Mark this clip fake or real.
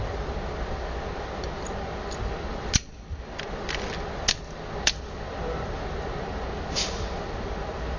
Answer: real